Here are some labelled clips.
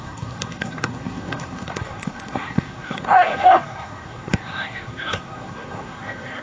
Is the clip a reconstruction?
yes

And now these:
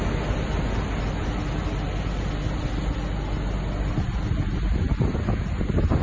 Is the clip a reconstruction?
no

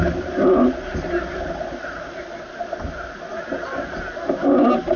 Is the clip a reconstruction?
no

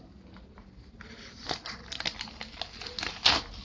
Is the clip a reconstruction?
no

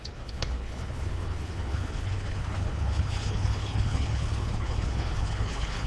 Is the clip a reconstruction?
yes